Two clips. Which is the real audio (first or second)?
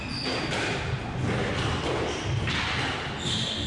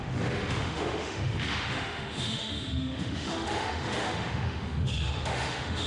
first